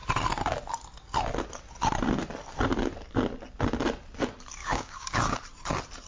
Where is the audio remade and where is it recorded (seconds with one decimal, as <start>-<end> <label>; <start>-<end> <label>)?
0.0-4.6 recorded; 4.6-5.3 remade; 5.3-6.1 recorded